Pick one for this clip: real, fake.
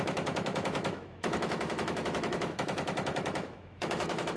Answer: fake